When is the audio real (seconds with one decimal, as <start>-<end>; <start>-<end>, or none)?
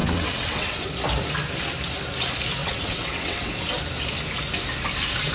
0.9-2.6; 3.5-5.3